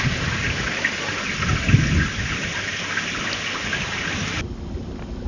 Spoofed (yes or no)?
no